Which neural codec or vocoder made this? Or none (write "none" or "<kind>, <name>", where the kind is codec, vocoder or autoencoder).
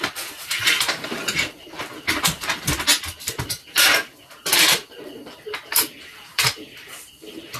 vocoder, BigVGAN v2